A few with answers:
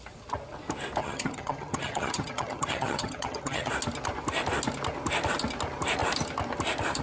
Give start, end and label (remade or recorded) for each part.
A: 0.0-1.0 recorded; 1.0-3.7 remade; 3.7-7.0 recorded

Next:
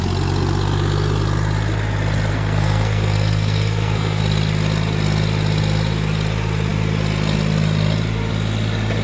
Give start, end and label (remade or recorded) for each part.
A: 0.0-2.3 recorded; 2.3-4.2 remade; 4.2-9.0 recorded

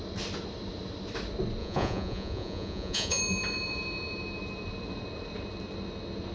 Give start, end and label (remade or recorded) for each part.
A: 0.0-1.6 recorded; 1.6-3.2 remade; 3.2-6.3 recorded

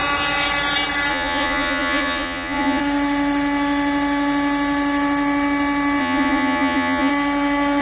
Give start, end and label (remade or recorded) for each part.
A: 0.0-1.1 recorded; 1.1-2.8 remade; 2.8-6.0 recorded; 6.0-7.1 remade; 7.1-7.8 recorded

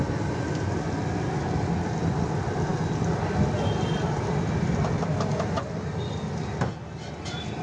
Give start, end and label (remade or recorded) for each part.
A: 0.0-7.6 recorded

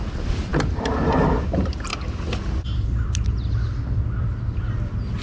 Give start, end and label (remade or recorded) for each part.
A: 0.0-5.2 recorded